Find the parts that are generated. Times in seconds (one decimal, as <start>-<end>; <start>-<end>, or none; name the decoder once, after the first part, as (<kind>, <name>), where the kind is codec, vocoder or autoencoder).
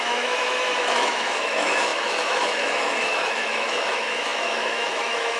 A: 0.0-5.4 (autoencoder, DAC-VAE)